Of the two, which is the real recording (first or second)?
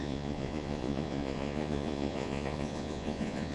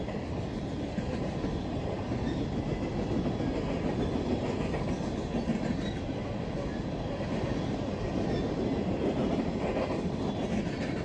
second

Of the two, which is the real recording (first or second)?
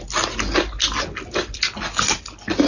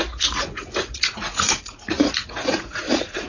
first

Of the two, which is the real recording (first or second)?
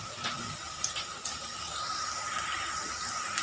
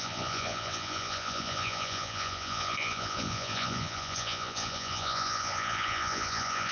first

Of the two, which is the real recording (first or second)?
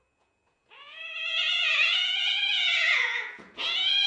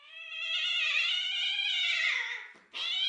second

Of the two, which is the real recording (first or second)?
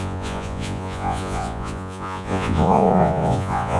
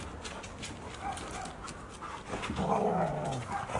second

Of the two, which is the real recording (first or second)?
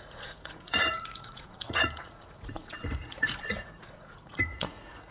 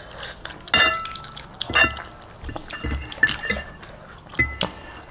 second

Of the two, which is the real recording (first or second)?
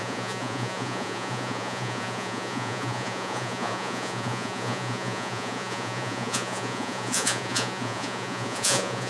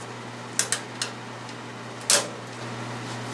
second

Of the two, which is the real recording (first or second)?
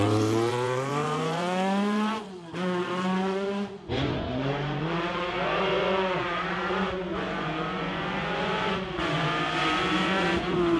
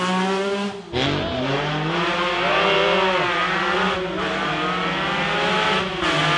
second